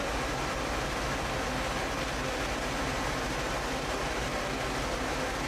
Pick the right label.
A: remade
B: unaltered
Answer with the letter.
B